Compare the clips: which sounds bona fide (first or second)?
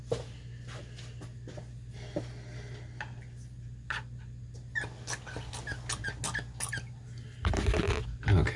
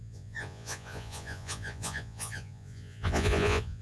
first